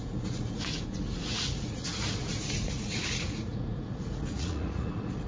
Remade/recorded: remade